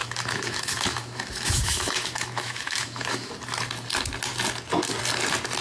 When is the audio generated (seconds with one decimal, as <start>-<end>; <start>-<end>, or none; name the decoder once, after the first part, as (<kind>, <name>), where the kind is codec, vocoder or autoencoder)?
0.0-3.3 (autoencoder, DAC-VAE)